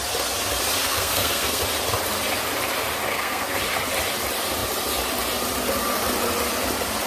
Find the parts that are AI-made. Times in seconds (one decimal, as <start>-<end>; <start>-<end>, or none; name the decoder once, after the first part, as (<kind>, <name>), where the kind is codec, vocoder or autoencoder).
0.8-1.6 (codec, SNAC); 3.1-3.6